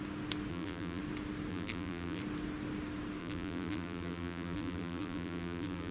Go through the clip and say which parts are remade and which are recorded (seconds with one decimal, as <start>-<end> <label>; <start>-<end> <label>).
0.0-0.5 recorded; 0.5-1.0 remade; 1.0-1.5 recorded; 1.5-2.2 remade; 2.2-3.2 recorded; 3.2-5.9 remade